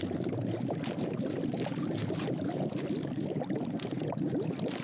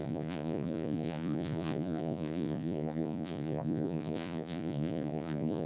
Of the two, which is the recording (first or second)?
first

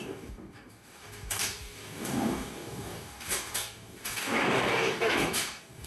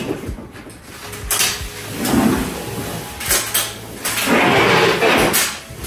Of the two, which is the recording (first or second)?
second